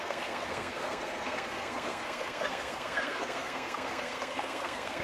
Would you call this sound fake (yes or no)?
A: yes